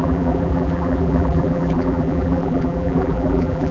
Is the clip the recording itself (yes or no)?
no